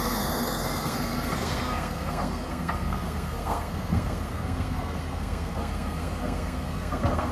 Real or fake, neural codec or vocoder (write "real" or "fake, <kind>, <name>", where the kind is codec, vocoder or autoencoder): fake, codec, SNAC